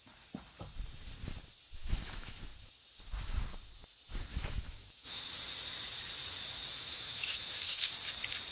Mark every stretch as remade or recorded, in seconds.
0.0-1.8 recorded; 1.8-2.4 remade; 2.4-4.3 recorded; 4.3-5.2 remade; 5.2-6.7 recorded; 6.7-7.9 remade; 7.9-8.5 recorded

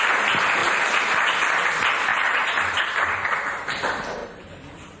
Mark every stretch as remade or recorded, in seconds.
0.0-2.1 recorded; 2.1-3.4 remade; 3.4-4.2 recorded; 4.2-5.0 remade

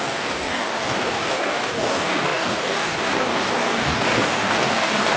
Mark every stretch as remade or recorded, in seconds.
0.0-5.2 remade